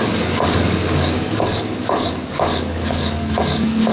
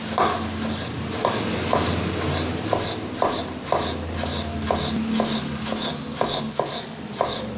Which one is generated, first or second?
first